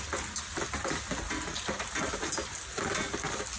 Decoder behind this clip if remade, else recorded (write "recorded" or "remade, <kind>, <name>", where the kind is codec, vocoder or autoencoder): recorded